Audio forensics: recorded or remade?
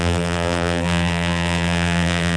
remade